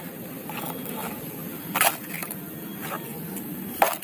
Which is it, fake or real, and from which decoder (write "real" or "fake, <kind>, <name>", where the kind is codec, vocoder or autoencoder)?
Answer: real